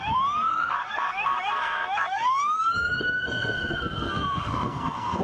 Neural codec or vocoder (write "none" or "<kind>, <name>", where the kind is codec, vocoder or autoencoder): codec, SNAC